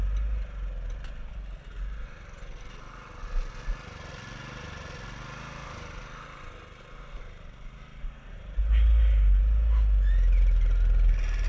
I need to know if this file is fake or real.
real